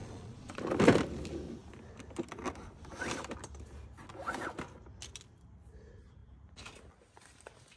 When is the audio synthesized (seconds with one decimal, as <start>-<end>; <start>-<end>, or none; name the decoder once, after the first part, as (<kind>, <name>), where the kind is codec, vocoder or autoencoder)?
0.0-0.6 (vocoder, Vocos)